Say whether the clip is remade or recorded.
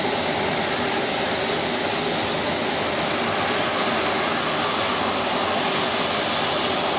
recorded